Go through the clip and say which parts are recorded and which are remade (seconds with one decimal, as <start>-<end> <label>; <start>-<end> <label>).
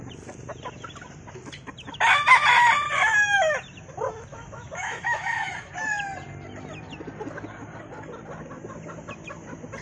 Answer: 0.0-4.3 recorded; 4.3-5.5 remade; 5.5-9.8 recorded